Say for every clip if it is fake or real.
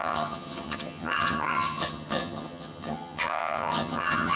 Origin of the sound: fake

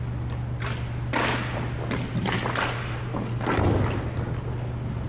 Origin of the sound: real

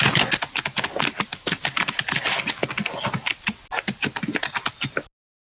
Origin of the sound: real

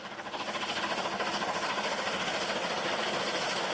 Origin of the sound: real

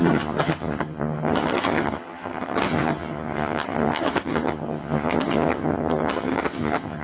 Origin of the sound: fake